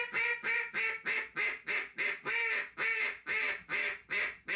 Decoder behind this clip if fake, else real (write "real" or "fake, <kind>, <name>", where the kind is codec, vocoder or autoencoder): real